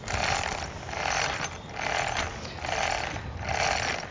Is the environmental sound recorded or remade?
recorded